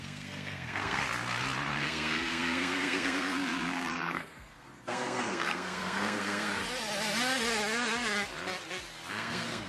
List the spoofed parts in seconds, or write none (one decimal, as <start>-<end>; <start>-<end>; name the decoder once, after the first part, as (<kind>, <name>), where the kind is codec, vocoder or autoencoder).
0.0-1.0 (codec, SNAC); 1.8-6.6; 9.1-9.7